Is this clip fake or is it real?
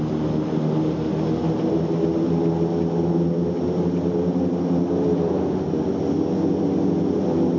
real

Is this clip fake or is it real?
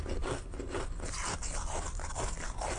real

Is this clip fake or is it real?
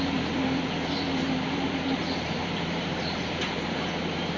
fake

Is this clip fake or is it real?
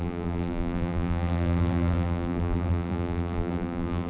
fake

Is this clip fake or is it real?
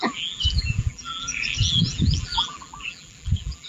fake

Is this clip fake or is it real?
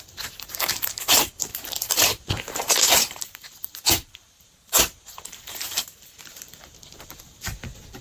fake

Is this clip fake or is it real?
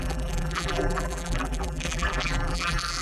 fake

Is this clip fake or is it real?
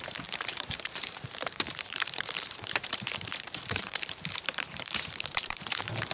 fake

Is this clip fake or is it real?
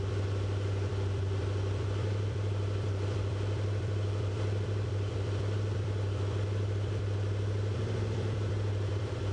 fake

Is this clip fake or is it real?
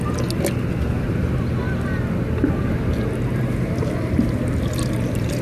real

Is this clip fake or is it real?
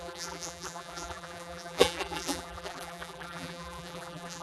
fake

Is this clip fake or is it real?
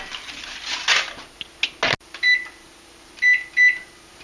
real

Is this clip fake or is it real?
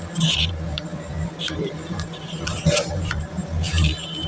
fake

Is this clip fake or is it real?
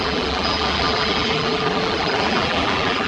fake